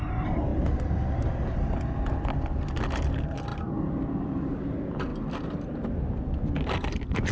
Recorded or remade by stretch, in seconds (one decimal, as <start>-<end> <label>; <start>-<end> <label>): 0.0-7.3 recorded

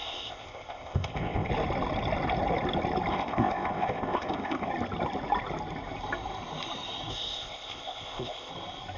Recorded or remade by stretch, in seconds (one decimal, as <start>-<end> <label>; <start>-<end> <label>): 0.0-1.5 remade; 1.5-3.1 recorded; 3.1-4.7 remade; 4.7-7.1 recorded; 7.1-8.5 remade; 8.5-9.0 recorded

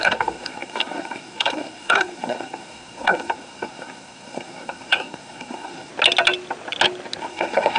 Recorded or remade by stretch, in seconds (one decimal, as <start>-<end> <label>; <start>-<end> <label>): 0.0-5.9 remade; 5.9-7.2 recorded; 7.2-7.8 remade

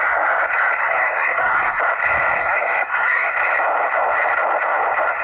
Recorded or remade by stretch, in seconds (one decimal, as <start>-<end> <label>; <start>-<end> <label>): 0.0-0.8 recorded; 0.8-1.8 remade; 1.8-2.4 recorded; 2.4-3.3 remade; 3.3-5.2 recorded

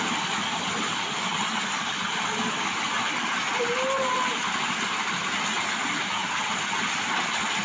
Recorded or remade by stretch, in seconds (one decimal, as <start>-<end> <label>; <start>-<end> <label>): 0.0-7.6 recorded